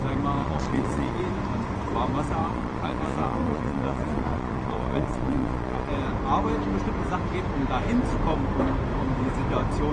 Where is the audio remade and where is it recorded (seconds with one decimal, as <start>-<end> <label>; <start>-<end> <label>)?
0.0-0.4 recorded; 0.4-1.2 remade; 1.2-2.4 recorded; 2.4-5.9 remade; 5.9-9.9 recorded